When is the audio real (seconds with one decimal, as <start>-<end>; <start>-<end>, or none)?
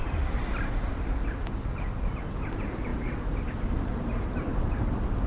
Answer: 0.0-5.3